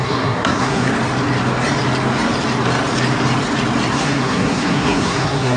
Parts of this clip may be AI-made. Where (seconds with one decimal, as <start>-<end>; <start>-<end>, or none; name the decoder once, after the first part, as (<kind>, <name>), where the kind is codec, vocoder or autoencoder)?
0.0-0.9 (codec, SNAC); 3.9-5.6